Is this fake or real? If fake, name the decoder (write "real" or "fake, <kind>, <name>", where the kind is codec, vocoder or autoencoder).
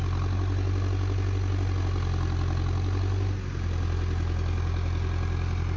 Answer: real